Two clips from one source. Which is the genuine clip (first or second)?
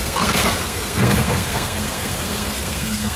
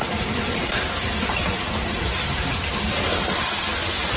second